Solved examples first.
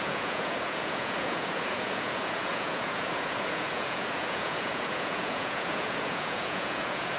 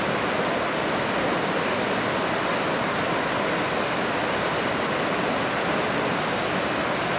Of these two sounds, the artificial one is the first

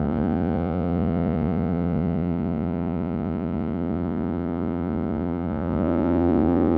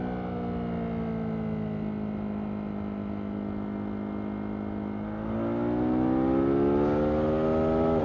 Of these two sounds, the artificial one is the first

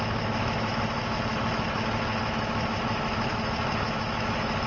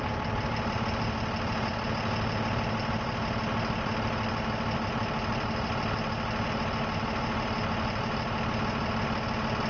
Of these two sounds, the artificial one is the first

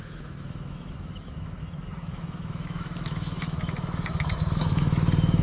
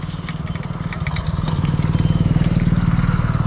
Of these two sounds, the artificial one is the first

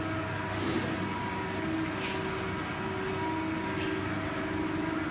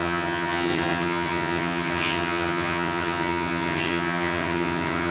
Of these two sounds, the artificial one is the second